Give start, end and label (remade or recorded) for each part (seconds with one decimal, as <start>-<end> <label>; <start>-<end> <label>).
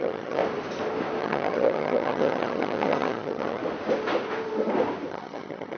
0.0-0.4 remade; 0.4-1.2 recorded; 1.2-3.6 remade; 3.6-5.1 recorded; 5.1-5.8 remade